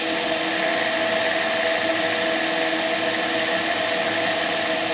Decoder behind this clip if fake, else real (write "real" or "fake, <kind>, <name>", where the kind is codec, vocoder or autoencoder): real